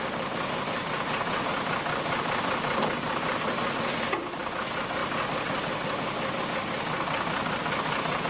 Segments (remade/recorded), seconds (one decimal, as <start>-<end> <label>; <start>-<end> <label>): 0.0-1.5 recorded; 1.5-3.5 remade; 3.5-8.3 recorded